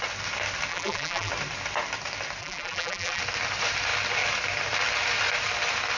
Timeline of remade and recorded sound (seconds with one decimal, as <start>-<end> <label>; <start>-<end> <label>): 0.0-0.7 recorded; 0.7-1.3 remade; 1.3-2.4 recorded; 2.4-3.2 remade; 3.2-6.0 recorded